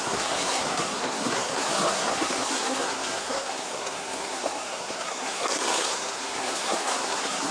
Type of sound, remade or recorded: remade